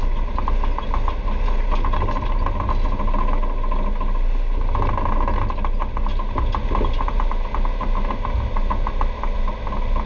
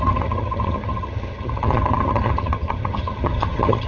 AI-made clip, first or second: second